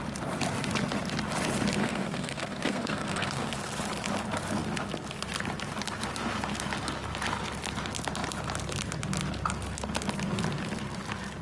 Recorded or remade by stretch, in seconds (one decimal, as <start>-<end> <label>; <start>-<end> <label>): 0.0-1.8 recorded; 1.8-3.5 remade; 3.5-11.4 recorded